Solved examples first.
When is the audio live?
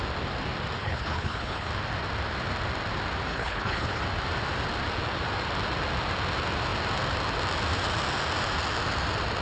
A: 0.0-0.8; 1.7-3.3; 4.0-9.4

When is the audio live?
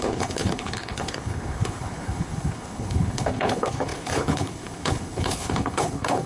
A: none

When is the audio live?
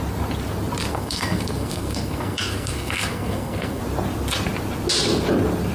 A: 0.0-0.9; 3.8-5.7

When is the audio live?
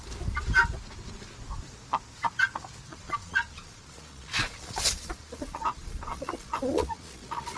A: 0.0-2.9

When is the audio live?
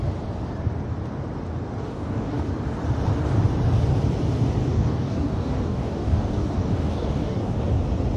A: 0.0-1.9; 2.5-4.6; 7.6-8.2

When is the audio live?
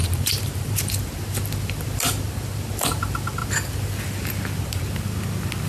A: 0.8-5.7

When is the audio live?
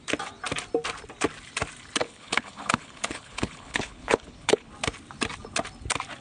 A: 0.0-2.0; 4.7-6.2